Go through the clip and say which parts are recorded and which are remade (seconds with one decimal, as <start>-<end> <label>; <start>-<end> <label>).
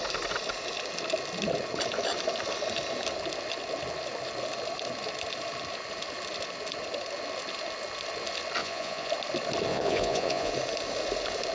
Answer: 0.0-8.6 recorded; 8.6-9.1 remade; 9.1-9.7 recorded; 9.7-10.5 remade; 10.5-11.5 recorded